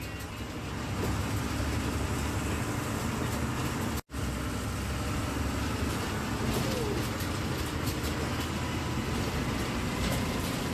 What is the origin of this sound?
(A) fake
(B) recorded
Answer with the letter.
B